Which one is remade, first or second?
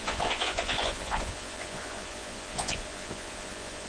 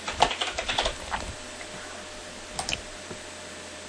first